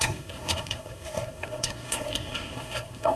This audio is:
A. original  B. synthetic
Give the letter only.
B